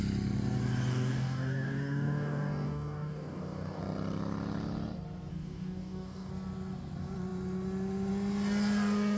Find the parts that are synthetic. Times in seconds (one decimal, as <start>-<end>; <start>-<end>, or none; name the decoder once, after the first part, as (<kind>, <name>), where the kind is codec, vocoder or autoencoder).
0.9-3.8 (codec, DAC); 5.3-6.3